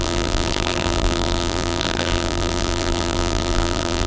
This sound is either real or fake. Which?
fake